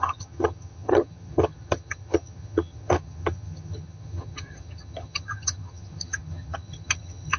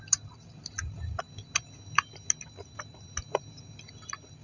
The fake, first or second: first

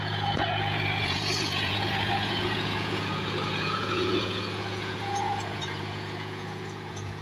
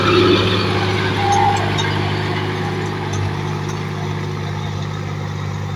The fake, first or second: first